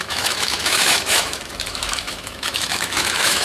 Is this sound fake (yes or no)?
yes